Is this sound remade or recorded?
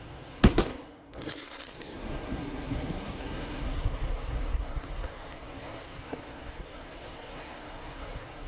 remade